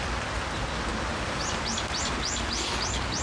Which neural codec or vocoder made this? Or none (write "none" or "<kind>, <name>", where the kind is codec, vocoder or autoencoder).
none